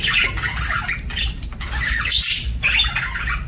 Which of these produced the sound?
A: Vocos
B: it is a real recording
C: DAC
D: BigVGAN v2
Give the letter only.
B